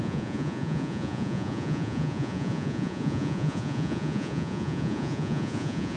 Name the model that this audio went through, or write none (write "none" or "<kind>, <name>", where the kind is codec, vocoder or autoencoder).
vocoder, Vocos